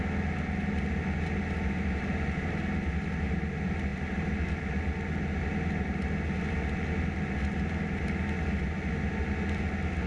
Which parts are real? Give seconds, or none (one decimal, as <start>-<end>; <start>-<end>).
0.0-10.1